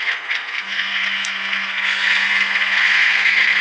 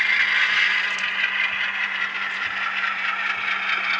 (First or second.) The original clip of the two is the second